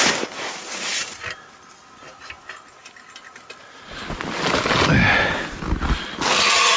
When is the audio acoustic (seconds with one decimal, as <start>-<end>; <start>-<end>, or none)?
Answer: 0.0-6.8